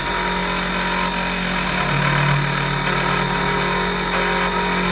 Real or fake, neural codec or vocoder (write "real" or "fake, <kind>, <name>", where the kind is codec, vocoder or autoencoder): real